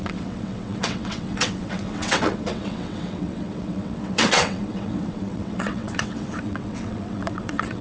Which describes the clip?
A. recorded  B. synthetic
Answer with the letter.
B